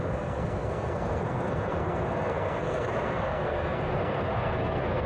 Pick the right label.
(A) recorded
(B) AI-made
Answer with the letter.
B